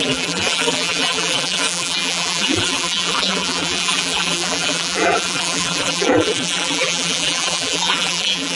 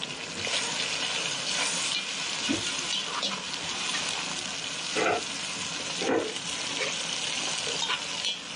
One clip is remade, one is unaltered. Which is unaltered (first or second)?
second